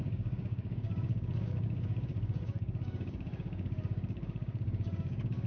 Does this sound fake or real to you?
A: fake